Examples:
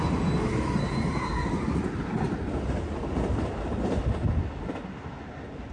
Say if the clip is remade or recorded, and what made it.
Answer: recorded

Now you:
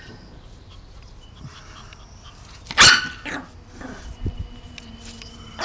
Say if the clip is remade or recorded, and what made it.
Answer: recorded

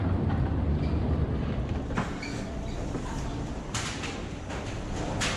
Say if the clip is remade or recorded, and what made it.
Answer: remade, vocoder, BigVGAN v2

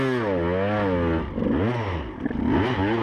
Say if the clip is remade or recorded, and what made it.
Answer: recorded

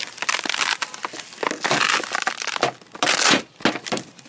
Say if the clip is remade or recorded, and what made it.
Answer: recorded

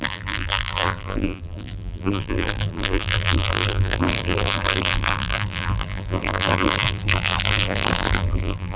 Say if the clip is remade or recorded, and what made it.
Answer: remade, vocoder, BigVGAN v2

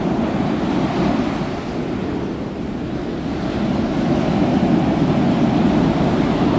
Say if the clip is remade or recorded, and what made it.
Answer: recorded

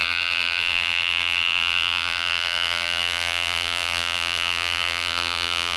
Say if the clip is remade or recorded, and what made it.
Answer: remade, vocoder, BigVGAN v2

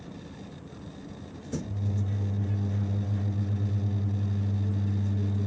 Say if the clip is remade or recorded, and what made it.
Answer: recorded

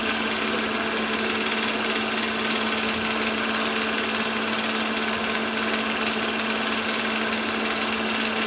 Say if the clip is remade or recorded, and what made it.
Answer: recorded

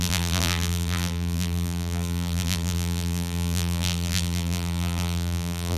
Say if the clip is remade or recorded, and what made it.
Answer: remade, vocoder, BigVGAN v2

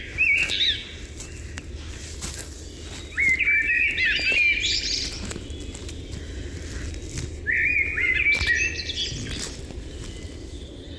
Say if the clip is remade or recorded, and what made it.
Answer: recorded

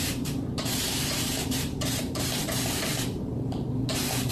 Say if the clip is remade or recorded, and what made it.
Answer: remade, vocoder, BigVGAN v2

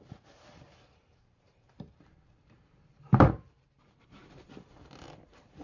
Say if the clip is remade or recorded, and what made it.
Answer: remade, vocoder, BigVGAN v2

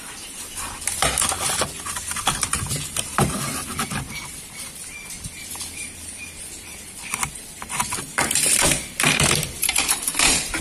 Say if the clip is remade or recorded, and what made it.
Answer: remade, vocoder, BigVGAN v2